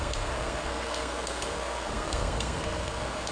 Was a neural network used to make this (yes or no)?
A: yes